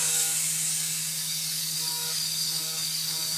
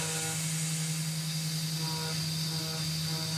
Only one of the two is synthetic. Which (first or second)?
first